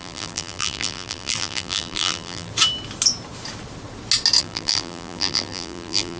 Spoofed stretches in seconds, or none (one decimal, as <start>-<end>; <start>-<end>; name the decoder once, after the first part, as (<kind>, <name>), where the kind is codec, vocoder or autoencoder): 0.0-2.5 (vocoder, BigVGAN v2); 4.4-6.2